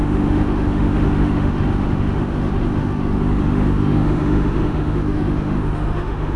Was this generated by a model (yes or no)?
yes